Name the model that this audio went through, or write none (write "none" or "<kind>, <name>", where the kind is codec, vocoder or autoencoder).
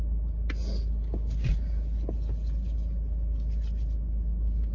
none